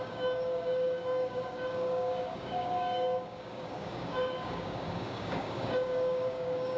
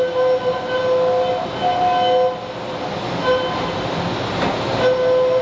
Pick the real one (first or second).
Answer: second